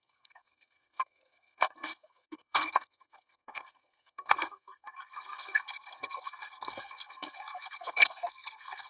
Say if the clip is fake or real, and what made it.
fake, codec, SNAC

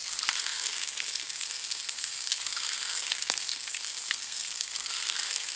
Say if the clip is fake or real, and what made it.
fake, codec, SNAC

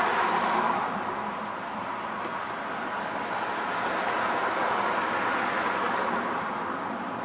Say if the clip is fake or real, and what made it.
real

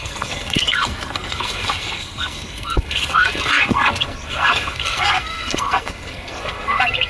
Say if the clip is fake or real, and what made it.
fake, codec, SNAC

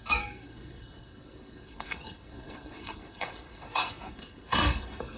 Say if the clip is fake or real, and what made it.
fake, codec, SNAC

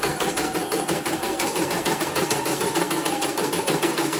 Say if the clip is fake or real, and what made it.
fake, codec, SNAC